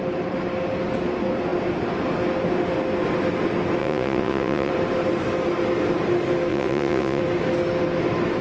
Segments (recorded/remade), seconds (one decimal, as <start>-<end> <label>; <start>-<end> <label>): 0.0-3.8 recorded; 3.8-4.7 remade; 4.7-6.5 recorded; 6.5-7.2 remade; 7.2-8.4 recorded